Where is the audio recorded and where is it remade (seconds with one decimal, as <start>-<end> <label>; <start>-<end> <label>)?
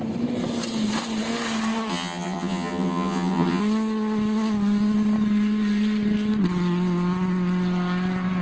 0.0-1.9 recorded; 1.9-3.6 remade; 3.6-8.4 recorded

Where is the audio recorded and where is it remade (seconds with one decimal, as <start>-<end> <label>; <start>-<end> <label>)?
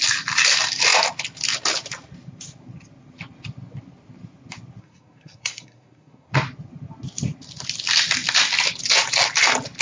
0.0-4.8 recorded; 4.8-6.3 remade; 6.3-9.8 recorded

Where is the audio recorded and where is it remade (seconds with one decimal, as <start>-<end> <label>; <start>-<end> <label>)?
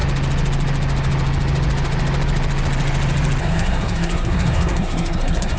0.0-3.4 recorded; 3.4-5.6 remade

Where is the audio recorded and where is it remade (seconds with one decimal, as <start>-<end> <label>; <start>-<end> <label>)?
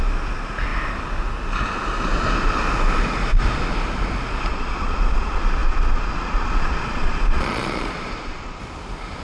0.0-4.5 recorded; 4.5-8.6 remade; 8.6-9.2 recorded